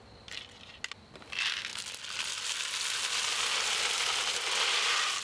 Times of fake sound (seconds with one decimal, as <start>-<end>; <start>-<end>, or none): none